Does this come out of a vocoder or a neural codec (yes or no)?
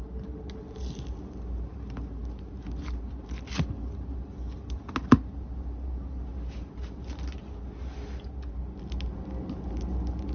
no